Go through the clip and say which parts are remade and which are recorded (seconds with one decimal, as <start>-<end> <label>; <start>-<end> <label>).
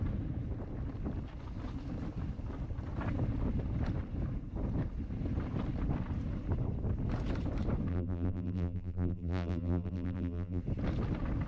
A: 0.0-7.9 recorded; 7.9-10.6 remade; 10.6-11.5 recorded